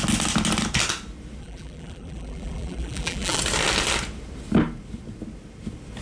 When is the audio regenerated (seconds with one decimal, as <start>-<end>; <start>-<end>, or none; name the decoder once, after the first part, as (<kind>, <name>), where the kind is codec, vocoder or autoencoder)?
1.4-3.4 (vocoder, BigVGAN v2)